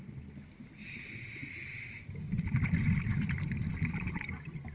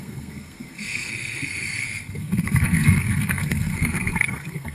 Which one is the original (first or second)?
first